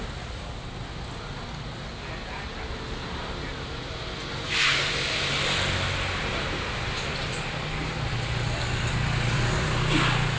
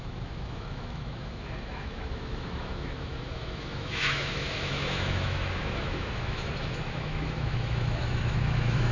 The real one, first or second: first